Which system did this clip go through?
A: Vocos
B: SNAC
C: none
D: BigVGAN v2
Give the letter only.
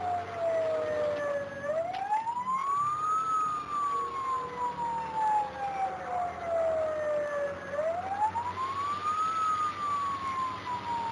C